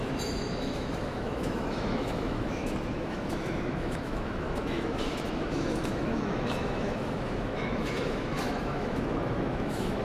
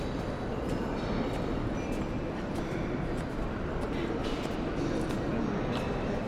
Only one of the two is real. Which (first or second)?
second